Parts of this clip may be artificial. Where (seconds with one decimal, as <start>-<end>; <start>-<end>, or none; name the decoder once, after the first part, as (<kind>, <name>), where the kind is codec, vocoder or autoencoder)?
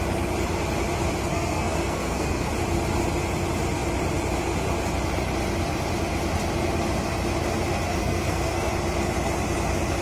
1.3-2.5 (codec, SNAC); 8.0-8.7